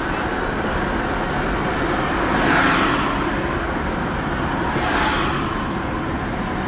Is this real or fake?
real